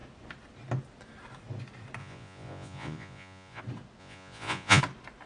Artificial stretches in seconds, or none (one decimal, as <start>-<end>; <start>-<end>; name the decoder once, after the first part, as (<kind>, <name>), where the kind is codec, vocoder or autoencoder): 2.0-3.6 (vocoder, Vocos); 4.0-4.8